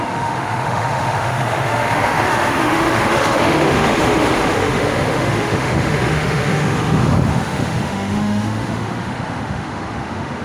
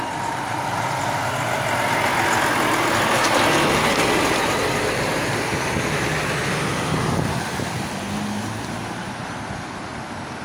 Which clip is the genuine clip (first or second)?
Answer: second